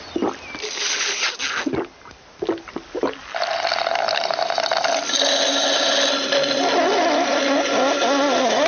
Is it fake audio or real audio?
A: real